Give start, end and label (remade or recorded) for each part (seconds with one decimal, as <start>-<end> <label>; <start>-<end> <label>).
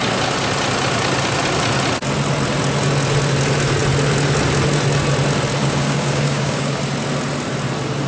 0.0-5.6 recorded; 5.6-6.8 remade; 6.8-8.1 recorded